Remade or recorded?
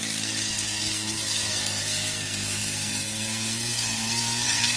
remade